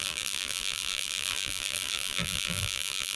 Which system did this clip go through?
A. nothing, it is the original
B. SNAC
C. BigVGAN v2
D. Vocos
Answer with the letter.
C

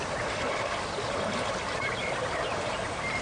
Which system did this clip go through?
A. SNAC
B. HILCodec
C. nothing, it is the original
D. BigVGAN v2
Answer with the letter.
C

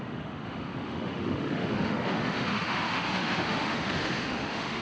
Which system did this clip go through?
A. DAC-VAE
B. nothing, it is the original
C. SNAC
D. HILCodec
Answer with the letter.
A